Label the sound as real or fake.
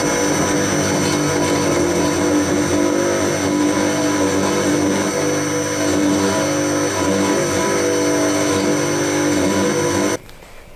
real